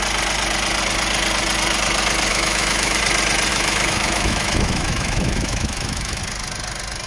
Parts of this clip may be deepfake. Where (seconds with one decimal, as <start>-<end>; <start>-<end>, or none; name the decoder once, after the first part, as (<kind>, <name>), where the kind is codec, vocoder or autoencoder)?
2.3-3.0 (autoencoder, DAC-VAE); 3.5-6.2